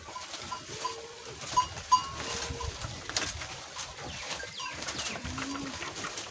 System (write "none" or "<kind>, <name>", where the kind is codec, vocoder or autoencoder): none